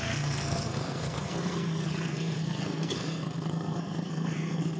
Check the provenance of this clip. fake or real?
fake